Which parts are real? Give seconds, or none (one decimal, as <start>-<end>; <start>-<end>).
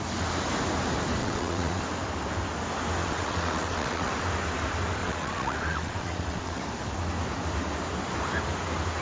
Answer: 0.0-1.2; 1.8-3.0; 4.1-5.0; 6.6-9.0